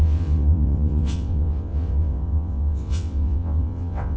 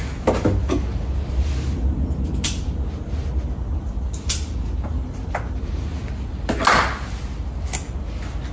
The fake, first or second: first